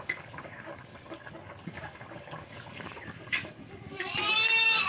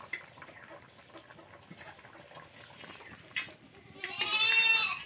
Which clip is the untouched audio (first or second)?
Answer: second